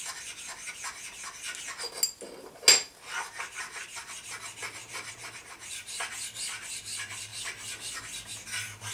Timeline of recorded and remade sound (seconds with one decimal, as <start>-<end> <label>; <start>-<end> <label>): 0.0-4.8 recorded; 4.8-6.1 remade; 6.1-7.3 recorded; 7.3-8.0 remade; 8.0-8.9 recorded